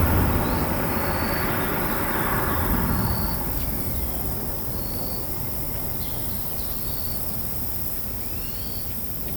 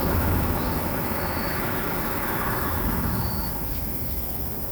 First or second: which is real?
first